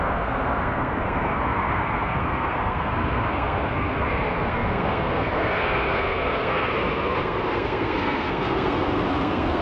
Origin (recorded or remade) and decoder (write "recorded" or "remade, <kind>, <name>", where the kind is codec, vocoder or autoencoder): remade, codec, SNAC